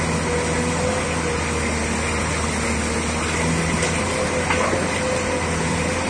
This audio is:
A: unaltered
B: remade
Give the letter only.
A